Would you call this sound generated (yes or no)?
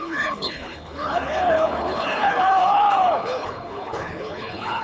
yes